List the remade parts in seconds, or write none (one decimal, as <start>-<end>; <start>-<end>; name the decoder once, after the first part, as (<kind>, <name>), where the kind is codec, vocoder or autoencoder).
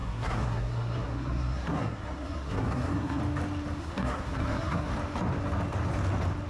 0.0-3.2 (codec, SNAC); 3.8-4.9